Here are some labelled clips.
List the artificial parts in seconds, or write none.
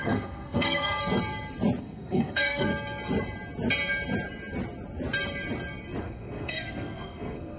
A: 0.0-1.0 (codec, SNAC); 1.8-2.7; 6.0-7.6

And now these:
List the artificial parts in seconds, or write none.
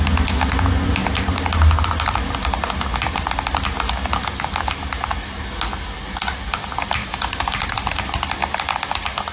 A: 7.0-7.6 (autoencoder, DAC-VAE)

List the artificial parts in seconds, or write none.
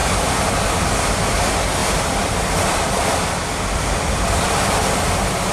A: 1.8-5.1 (vocoder, BigVGAN v2)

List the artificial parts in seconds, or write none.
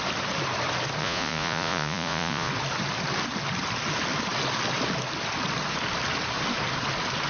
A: 1.0-2.5 (vocoder, Vocos)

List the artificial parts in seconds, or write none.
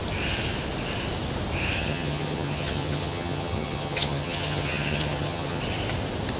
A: 1.8-5.6 (vocoder, HiFi-GAN)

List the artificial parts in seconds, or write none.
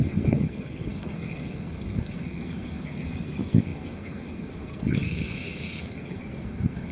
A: 0.0-6.9 (codec, SNAC)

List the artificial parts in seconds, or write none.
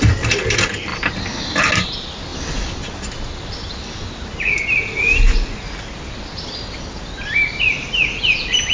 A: none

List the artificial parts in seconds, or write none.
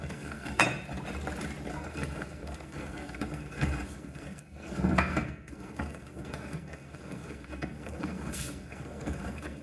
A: 0.0-0.6 (codec, SNAC); 1.7-9.6